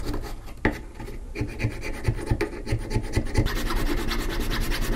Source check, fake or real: real